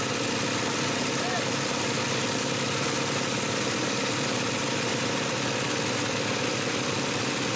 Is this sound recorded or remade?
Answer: recorded